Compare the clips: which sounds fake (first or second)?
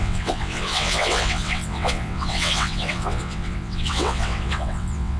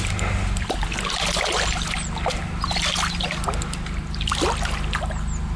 first